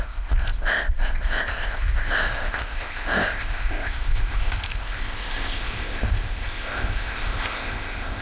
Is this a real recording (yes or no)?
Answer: no